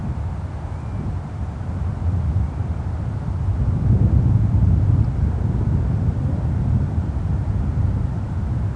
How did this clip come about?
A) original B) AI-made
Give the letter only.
A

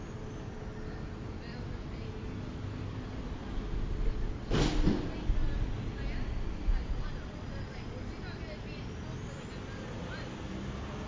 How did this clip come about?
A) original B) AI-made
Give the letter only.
A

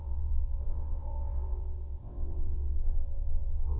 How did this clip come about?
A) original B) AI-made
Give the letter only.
B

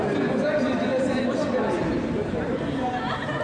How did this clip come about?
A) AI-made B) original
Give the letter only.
B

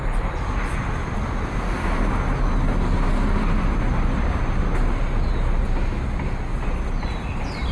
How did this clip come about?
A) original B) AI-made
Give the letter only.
A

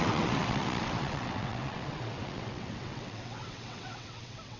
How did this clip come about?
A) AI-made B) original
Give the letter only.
A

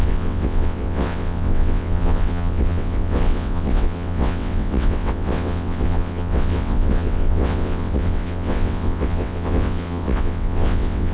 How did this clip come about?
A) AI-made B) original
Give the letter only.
A